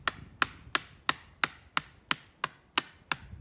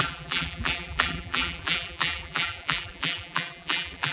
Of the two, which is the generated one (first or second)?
second